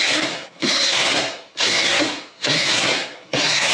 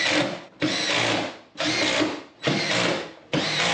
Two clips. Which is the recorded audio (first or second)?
second